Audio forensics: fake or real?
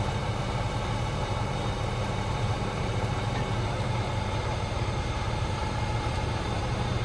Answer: fake